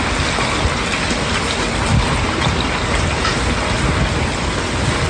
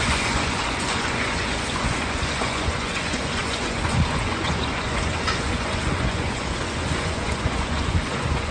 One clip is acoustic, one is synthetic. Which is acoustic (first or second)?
first